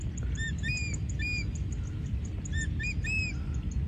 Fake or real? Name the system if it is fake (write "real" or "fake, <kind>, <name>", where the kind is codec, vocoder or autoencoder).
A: real